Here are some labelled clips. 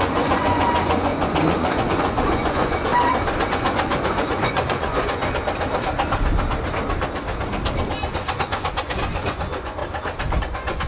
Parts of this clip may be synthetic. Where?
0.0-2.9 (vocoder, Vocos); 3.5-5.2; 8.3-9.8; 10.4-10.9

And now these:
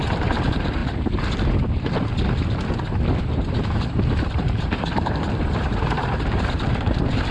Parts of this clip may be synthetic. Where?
0.0-0.8 (vocoder, BigVGAN v2); 3.2-7.3